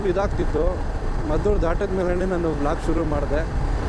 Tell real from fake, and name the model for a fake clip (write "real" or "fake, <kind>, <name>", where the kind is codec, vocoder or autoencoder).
fake, vocoder, BigVGAN v2